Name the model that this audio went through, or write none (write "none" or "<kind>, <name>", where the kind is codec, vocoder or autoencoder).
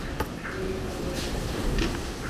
none